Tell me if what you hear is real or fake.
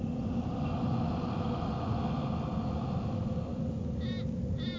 real